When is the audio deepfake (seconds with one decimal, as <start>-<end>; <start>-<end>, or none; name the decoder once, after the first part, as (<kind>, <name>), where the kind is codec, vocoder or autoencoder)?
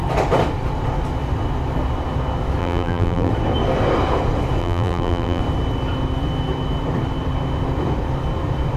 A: 2.6-3.3 (vocoder, BigVGAN v2); 4.6-5.4